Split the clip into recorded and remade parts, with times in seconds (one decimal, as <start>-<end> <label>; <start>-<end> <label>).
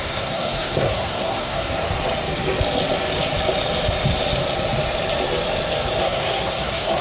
0.0-1.8 remade; 1.8-6.0 recorded; 6.0-7.0 remade